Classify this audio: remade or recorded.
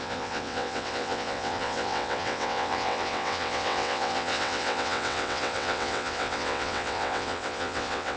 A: remade